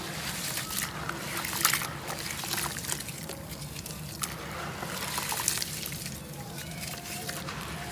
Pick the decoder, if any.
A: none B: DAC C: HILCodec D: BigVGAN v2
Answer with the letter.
A